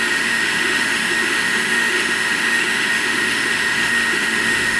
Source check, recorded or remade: remade